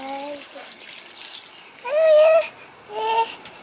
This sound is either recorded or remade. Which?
recorded